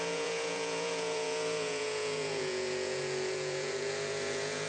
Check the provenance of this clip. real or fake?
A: fake